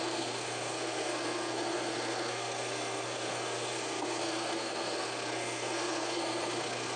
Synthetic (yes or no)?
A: yes